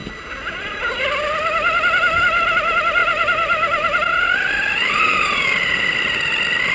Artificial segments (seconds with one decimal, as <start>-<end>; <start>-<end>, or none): 3.0-5.8